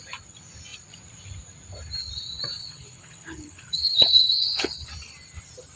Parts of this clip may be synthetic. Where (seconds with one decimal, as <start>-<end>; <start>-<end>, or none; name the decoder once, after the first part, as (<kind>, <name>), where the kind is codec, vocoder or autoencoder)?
2.6-4.9 (codec, HILCodec)